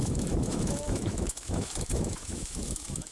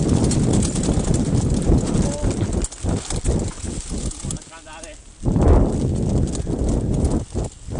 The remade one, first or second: first